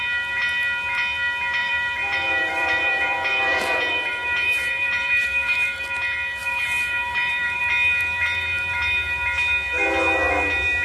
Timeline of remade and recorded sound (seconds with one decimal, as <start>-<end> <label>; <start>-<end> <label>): 0.0-1.6 recorded; 1.6-5.8 remade; 5.8-6.4 recorded; 6.4-7.6 remade; 7.6-10.8 recorded